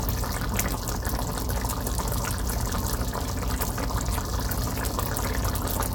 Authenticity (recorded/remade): recorded